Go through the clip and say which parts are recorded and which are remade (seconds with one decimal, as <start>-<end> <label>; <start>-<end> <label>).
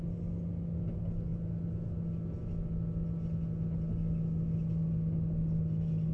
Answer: 0.0-6.1 recorded